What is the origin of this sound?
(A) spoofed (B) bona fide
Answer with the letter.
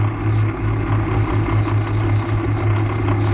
B